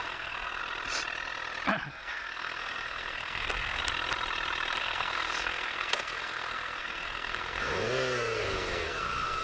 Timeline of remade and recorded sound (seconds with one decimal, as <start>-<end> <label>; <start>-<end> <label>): 0.0-0.6 remade; 0.6-1.9 recorded; 1.9-3.8 remade; 3.8-4.8 recorded; 4.8-9.4 remade